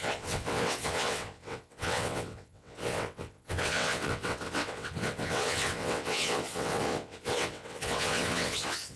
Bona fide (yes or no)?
no